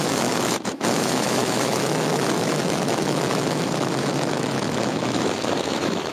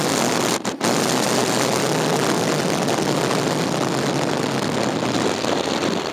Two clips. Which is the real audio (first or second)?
second